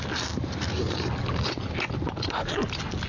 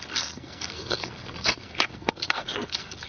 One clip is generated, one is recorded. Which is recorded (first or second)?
first